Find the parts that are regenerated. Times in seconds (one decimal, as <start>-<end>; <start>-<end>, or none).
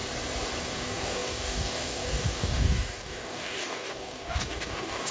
0.6-5.1